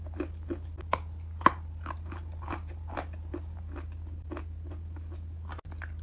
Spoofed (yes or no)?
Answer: no